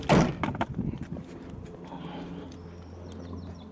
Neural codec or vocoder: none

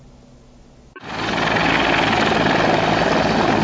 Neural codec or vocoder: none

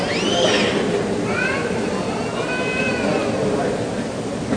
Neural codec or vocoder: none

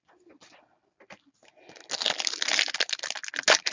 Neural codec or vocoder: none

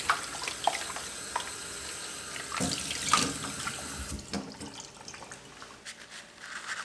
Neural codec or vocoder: none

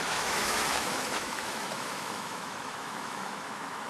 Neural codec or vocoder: autoencoder, DAC-VAE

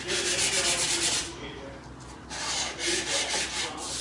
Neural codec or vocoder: none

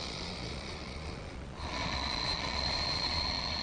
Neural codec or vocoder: vocoder, Vocos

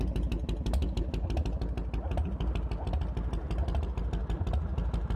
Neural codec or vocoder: none